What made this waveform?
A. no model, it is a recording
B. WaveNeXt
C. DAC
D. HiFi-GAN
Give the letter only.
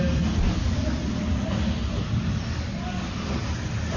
A